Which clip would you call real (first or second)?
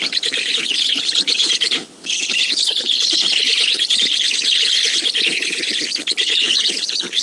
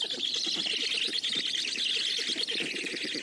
second